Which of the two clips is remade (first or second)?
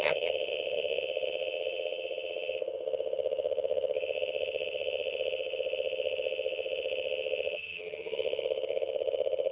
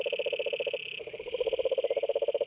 first